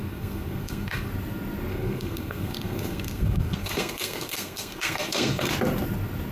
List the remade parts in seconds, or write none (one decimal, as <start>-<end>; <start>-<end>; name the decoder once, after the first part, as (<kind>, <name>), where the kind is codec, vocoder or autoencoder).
0.0-1.1 (codec, SNAC); 1.7-5.5